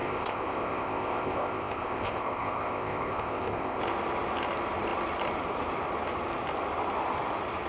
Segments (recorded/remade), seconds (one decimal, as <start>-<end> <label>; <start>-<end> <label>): 0.0-3.8 remade; 3.8-7.7 recorded